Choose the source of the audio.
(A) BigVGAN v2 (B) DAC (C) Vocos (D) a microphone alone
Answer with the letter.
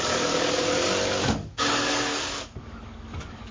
B